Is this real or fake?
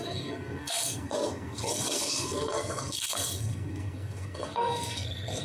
fake